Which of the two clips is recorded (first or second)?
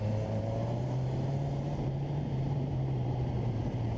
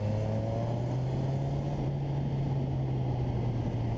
second